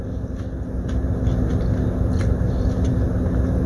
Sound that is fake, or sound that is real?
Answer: real